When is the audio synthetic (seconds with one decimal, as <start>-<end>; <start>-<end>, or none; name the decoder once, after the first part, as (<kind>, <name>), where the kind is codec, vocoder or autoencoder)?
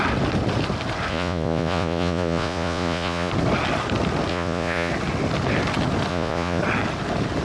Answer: 1.1-3.3 (vocoder, Vocos); 4.3-4.9; 6.1-6.6